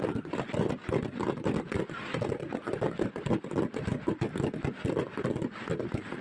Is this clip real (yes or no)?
yes